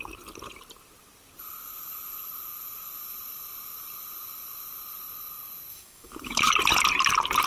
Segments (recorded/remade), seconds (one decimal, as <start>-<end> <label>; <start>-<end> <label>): 0.0-5.7 recorded; 5.7-6.5 remade; 6.5-7.5 recorded